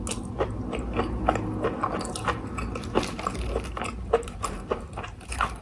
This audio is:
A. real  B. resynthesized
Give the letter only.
A